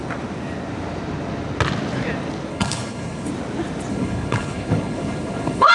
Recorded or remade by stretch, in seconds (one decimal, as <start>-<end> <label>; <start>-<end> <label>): 0.0-2.5 recorded; 2.5-3.3 remade; 3.3-3.9 recorded; 3.9-5.7 remade

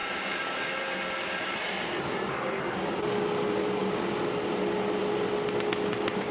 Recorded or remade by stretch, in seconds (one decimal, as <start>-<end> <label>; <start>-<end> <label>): 0.0-6.3 recorded

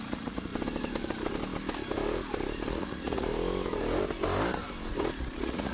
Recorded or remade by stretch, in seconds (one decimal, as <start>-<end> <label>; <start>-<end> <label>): 0.0-0.5 remade; 0.5-2.7 recorded; 2.7-3.3 remade; 3.3-5.2 recorded; 5.2-5.7 remade

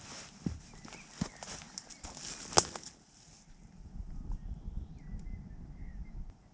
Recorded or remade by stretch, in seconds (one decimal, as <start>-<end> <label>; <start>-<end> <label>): 0.0-6.5 recorded

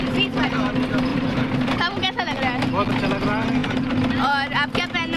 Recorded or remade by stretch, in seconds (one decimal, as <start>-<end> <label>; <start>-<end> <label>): 0.0-1.1 recorded; 1.1-1.7 remade; 1.7-3.6 recorded; 3.6-4.3 remade; 4.3-5.2 recorded

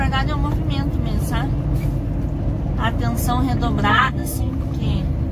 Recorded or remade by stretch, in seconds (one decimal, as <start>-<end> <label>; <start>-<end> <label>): 0.0-3.9 recorded; 3.9-4.5 remade; 4.5-5.3 recorded

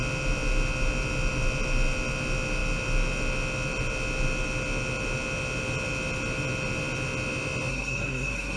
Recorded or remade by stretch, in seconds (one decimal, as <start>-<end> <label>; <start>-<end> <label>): 0.0-7.7 recorded; 7.7-8.6 remade